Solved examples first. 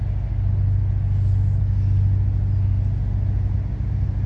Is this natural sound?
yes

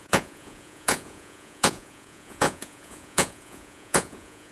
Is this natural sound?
no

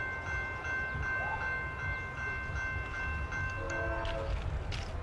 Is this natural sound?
yes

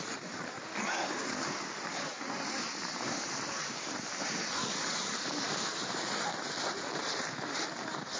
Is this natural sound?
yes